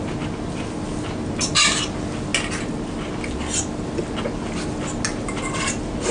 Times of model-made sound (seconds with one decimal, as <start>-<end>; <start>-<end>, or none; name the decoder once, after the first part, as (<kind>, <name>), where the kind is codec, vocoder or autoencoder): none

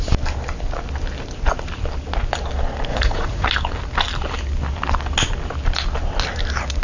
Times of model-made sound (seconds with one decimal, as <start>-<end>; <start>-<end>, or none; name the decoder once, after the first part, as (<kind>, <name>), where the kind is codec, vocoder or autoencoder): 2.9-3.5 (vocoder, Vocos)

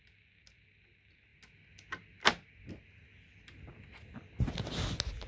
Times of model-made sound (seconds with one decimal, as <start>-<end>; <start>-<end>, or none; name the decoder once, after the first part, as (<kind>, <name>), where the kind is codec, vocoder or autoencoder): none

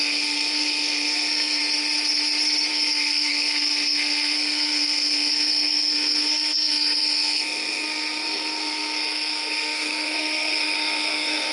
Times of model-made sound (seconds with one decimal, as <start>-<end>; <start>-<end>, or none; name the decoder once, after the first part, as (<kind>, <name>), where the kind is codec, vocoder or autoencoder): 0.0-1.6 (codec, SNAC); 2.7-11.5

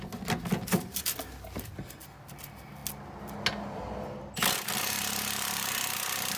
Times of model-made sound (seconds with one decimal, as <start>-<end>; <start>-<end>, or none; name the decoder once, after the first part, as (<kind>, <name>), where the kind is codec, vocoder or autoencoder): none